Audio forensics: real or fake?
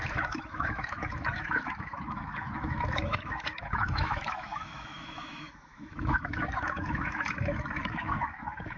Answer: fake